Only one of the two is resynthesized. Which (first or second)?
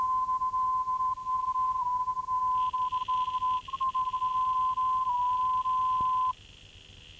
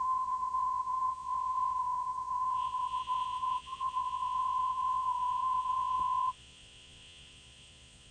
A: second